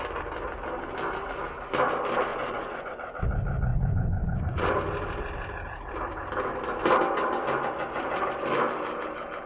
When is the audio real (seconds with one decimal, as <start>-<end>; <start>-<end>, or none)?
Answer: 0.0-2.3; 2.9-3.7; 4.7-9.5